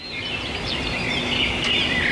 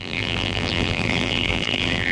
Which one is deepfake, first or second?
second